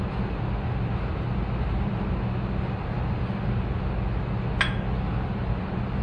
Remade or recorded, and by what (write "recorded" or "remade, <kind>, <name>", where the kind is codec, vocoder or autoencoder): recorded